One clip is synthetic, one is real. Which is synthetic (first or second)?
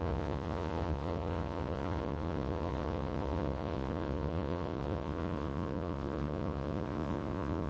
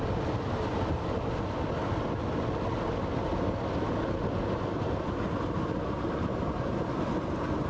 first